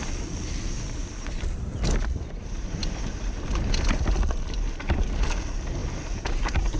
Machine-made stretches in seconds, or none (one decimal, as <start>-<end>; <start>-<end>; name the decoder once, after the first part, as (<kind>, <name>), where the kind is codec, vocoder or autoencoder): 2.8-3.6 (vocoder, BigVGAN v2)

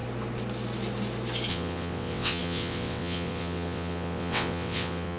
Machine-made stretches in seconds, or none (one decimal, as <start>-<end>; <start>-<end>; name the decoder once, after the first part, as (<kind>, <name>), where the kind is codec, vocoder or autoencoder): 1.5-5.2 (vocoder, WaveNeXt)

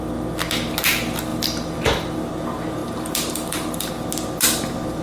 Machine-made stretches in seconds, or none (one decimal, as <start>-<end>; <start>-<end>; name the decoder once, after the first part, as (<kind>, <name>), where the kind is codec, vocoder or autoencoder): 1.3-2.2 (vocoder, BigVGAN v2); 2.8-3.9

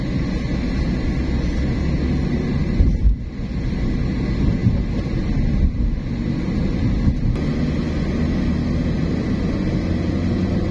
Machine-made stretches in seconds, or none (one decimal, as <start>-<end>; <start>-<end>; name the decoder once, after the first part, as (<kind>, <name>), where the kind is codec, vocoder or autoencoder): 2.6-3.2 (vocoder, BigVGAN v2)

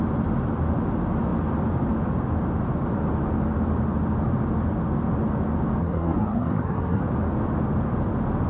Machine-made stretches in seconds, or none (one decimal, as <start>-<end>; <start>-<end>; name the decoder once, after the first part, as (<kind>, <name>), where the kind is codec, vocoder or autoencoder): 5.8-7.0 (codec, SNAC)

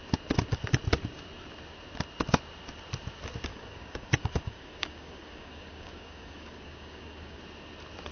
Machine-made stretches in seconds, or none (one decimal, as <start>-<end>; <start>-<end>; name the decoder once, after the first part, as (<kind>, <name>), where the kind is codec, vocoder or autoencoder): 3.5-7.4 (codec, DAC)

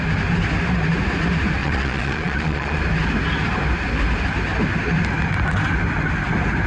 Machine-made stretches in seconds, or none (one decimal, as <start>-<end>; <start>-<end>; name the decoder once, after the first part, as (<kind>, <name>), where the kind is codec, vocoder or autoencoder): 1.6-2.8 (vocoder, Vocos)